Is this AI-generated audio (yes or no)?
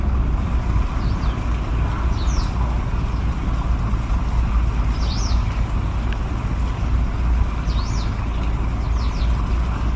no